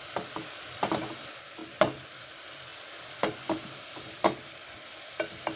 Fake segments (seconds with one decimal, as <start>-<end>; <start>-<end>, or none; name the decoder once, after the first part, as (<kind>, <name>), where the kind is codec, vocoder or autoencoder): none